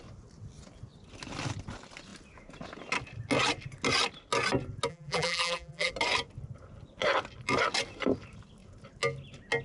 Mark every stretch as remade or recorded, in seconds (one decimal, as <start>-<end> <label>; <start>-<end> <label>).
0.0-4.9 recorded; 4.9-5.9 remade; 5.9-9.6 recorded

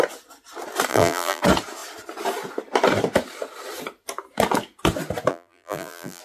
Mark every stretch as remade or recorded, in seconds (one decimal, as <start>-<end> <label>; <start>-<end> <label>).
0.0-0.9 recorded; 0.9-1.4 remade; 1.4-5.3 recorded; 5.3-6.2 remade

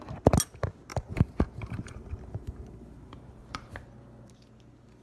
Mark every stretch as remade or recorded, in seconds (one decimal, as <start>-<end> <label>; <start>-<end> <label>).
0.0-0.9 recorded; 0.9-3.7 remade; 3.7-5.0 recorded

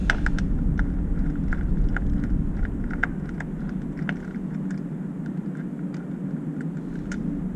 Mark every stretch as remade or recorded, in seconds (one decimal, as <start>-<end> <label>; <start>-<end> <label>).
0.0-7.6 recorded

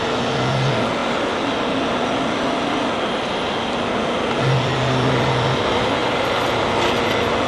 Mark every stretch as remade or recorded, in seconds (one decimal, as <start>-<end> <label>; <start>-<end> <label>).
0.0-6.0 recorded; 6.0-6.6 remade; 6.6-7.5 recorded